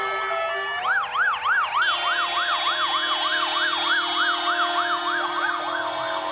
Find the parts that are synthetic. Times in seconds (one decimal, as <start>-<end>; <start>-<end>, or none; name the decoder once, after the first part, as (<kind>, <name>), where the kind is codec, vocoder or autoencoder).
none